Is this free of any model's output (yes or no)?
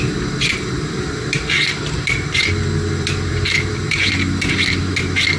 no